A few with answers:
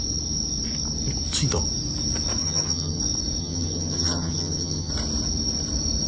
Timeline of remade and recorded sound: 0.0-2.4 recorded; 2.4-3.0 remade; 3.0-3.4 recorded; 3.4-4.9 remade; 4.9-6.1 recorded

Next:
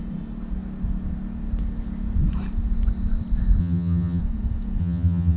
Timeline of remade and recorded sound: 0.0-3.6 recorded; 3.6-4.2 remade; 4.2-4.8 recorded; 4.8-5.4 remade

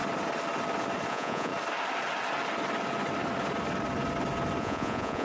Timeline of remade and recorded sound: 0.0-1.1 recorded; 1.1-1.5 remade; 1.5-4.6 recorded; 4.6-5.2 remade